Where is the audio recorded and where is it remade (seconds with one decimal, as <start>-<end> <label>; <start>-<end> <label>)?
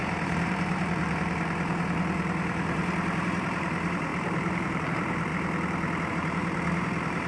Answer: 0.0-5.3 remade; 5.3-6.1 recorded; 6.1-7.3 remade